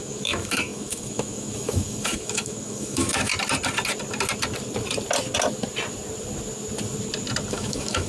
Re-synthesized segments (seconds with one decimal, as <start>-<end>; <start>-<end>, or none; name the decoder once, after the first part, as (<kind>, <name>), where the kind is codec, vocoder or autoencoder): 0.0-3.3 (autoencoder, DAC-VAE); 7.5-8.1